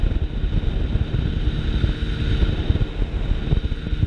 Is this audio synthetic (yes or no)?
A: no